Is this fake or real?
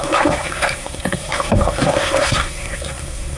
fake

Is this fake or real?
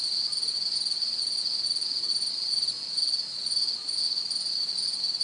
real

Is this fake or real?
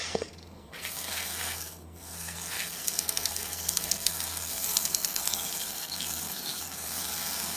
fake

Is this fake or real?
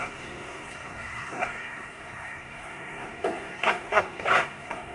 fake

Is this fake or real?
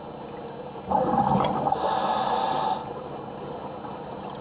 real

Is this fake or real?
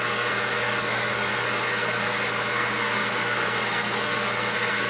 fake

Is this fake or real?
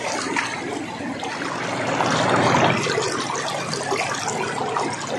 real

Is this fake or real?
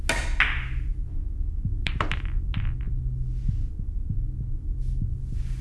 real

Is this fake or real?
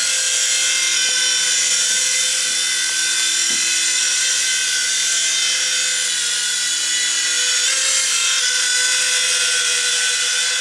real